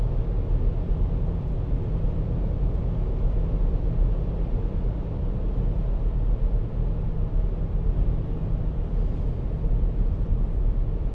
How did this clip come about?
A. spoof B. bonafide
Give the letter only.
B